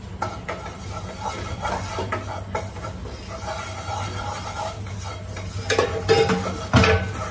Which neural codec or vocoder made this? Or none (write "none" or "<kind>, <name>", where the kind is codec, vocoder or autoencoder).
none